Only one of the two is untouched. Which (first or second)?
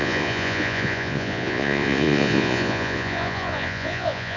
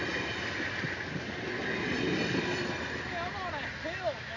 second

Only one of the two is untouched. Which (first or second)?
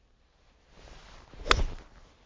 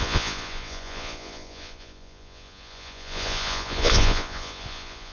first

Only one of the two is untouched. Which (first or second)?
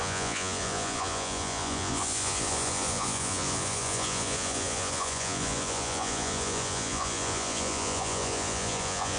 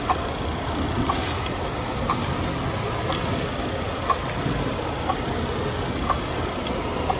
second